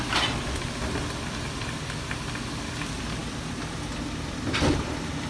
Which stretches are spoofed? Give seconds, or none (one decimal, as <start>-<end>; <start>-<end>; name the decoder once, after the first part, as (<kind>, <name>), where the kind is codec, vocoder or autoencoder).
none